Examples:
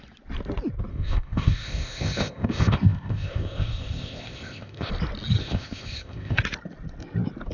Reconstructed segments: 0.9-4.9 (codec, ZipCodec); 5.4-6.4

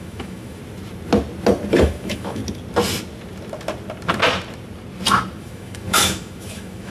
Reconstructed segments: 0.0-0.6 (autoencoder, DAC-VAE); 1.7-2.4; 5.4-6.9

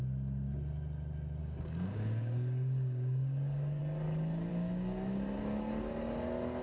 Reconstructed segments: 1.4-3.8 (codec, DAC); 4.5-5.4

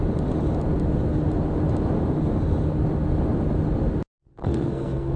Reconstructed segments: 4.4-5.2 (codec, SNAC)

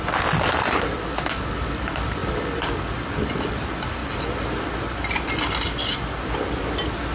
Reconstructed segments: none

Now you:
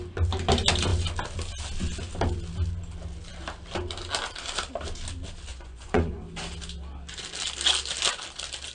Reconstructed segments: 5.5-6.1 (vocoder, Vocos)